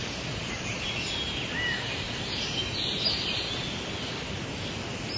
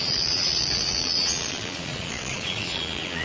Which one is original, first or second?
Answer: first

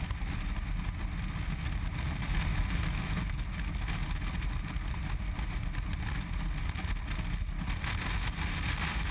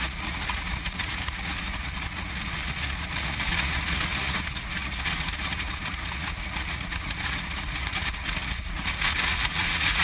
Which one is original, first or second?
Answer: first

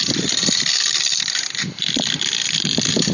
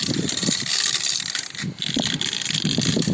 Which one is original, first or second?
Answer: second